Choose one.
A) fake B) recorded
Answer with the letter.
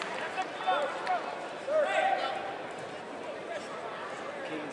B